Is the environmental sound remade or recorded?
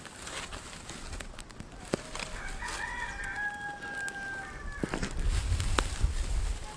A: recorded